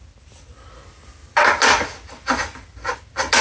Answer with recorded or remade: recorded